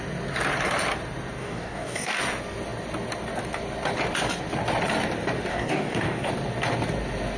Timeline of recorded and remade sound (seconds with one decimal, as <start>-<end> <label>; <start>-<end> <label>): 0.0-1.4 recorded; 1.4-2.2 remade; 2.2-5.5 recorded; 5.5-6.3 remade; 6.3-7.4 recorded